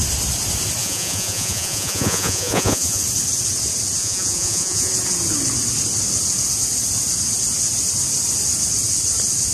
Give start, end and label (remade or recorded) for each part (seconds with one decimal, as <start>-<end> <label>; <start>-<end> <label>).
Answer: 0.0-0.8 recorded; 0.8-3.0 remade; 3.0-4.0 recorded; 4.0-4.9 remade; 4.9-9.5 recorded